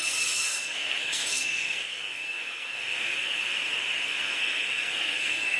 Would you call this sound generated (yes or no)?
yes